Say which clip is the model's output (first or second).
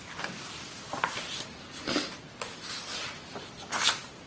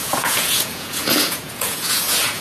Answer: second